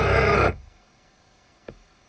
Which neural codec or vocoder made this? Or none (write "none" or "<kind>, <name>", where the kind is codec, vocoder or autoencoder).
codec, SNAC